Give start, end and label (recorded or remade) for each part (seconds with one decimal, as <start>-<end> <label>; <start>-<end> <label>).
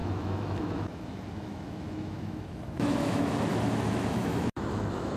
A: 0.0-5.2 remade